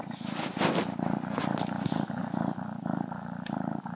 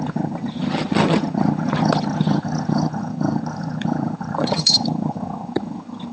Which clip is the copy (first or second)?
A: second